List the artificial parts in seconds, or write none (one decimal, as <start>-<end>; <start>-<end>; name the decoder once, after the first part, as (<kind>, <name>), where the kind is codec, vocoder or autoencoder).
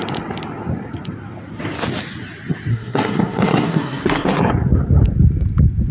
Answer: 2.7-4.5 (codec, SNAC)